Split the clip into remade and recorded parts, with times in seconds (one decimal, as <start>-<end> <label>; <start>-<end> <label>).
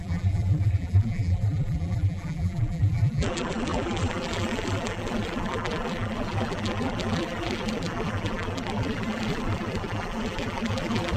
0.0-11.2 remade